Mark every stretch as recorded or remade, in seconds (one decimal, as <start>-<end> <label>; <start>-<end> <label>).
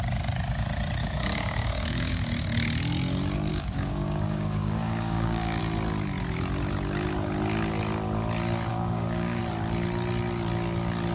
0.0-1.0 recorded; 1.0-2.2 remade; 2.2-3.5 recorded; 3.5-5.6 remade; 5.6-8.7 recorded; 8.7-9.4 remade; 9.4-11.1 recorded